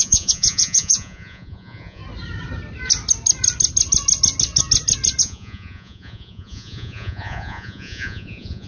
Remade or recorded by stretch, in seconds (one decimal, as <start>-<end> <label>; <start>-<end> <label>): 0.0-2.0 remade; 2.0-5.2 recorded; 5.2-8.7 remade